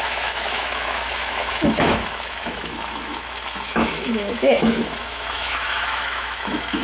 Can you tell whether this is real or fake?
fake